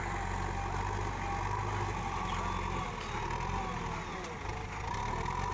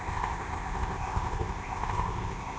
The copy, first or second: second